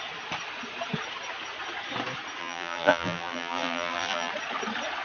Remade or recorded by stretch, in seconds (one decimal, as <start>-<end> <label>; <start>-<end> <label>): 0.0-2.4 recorded; 2.4-4.3 remade; 4.3-5.0 recorded